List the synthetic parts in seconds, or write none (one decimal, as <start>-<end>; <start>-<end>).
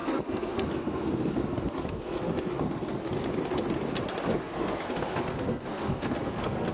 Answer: 0.0-3.0; 4.3-6.7